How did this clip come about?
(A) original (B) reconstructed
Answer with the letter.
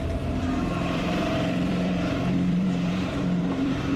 B